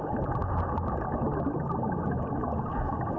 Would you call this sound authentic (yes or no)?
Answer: yes